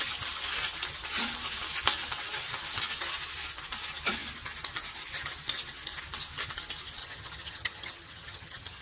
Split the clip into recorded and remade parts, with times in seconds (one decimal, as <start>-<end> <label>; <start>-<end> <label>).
0.0-7.0 recorded; 7.0-8.8 remade